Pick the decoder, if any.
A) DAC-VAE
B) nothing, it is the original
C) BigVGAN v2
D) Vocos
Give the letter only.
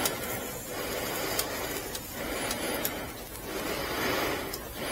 B